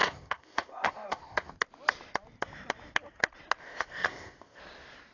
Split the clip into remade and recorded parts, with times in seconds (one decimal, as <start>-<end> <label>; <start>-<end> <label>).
0.0-1.5 remade; 1.5-3.6 recorded; 3.6-4.6 remade; 4.6-5.1 recorded